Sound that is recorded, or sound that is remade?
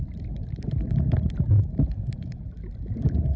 recorded